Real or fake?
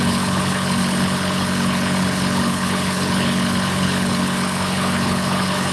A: fake